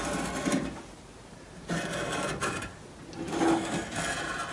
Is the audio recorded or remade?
recorded